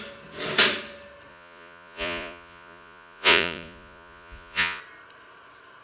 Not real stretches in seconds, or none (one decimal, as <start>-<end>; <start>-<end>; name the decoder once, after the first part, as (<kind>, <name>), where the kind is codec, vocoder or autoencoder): 1.3-4.8 (vocoder, Vocos)